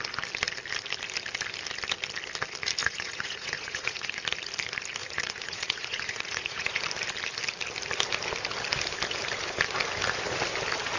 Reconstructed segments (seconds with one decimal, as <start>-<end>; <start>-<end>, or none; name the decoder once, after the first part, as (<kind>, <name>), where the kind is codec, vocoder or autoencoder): 2.8-4.2 (vocoder, Vocos); 5.0-6.8